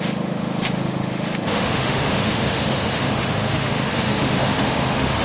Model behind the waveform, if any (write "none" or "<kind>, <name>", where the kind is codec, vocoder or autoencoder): autoencoder, DAC-VAE